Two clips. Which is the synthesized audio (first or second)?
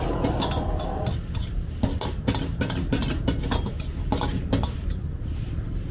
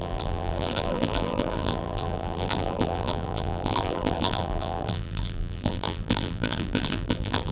second